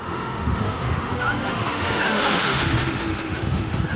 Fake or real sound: fake